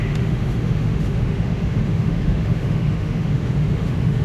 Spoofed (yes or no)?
yes